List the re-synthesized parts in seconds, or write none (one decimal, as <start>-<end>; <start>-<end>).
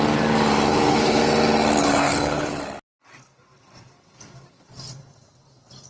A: 0.7-1.2; 1.8-2.6